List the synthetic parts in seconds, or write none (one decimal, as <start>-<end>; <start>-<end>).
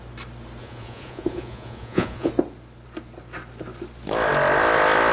0.6-2.3